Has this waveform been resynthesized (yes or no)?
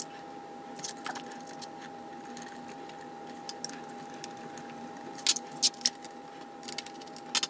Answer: no